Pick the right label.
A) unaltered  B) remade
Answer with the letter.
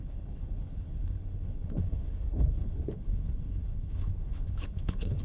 B